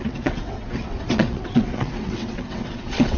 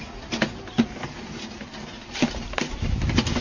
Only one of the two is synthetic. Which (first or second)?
first